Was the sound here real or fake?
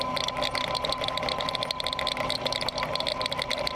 real